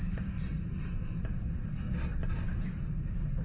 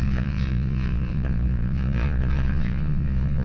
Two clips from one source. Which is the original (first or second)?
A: first